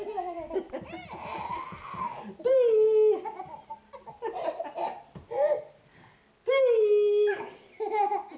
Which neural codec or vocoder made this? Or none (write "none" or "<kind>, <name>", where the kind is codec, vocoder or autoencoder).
none